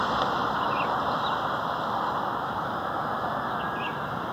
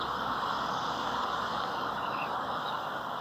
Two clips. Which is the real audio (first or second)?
first